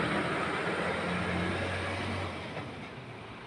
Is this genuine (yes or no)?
yes